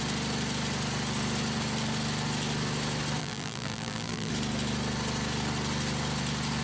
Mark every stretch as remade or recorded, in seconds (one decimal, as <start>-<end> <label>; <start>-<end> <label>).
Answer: 0.0-3.2 recorded; 3.2-4.3 remade; 4.3-6.6 recorded